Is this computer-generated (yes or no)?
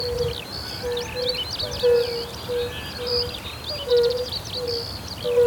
no